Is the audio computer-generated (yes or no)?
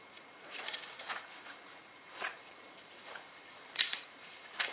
yes